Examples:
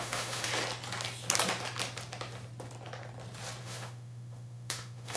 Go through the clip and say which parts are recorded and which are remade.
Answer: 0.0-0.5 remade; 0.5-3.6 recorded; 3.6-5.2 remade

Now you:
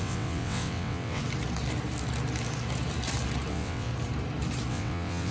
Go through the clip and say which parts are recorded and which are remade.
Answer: 0.0-1.2 remade; 1.2-3.5 recorded; 3.5-3.9 remade; 3.9-4.7 recorded; 4.7-5.3 remade

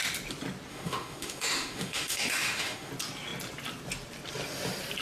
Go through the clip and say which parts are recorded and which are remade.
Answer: 0.0-0.7 recorded; 0.7-2.9 remade; 2.9-5.0 recorded

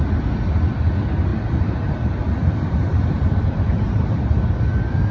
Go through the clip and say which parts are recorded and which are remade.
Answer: 0.0-1.3 recorded; 1.3-4.4 remade; 4.4-5.1 recorded